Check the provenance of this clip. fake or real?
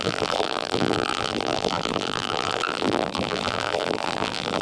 fake